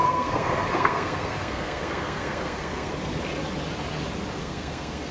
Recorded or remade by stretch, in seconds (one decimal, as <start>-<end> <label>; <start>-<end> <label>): 0.0-2.9 remade; 2.9-4.4 recorded; 4.4-5.1 remade